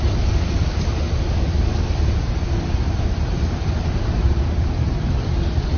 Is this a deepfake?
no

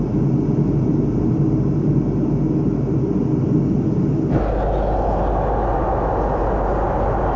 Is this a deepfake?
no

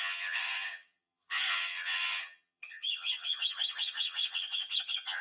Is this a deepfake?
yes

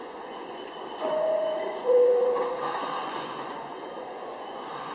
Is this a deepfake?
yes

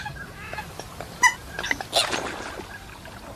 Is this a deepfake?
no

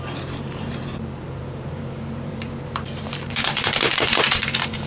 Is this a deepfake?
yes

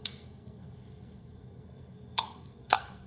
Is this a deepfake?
yes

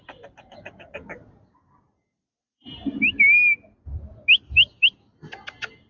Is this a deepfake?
no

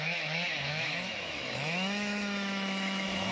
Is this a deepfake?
yes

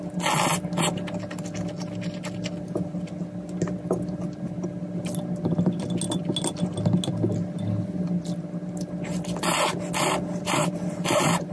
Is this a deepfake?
no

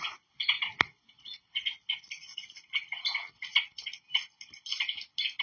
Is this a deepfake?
no